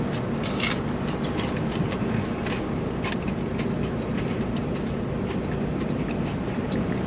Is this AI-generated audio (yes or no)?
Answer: no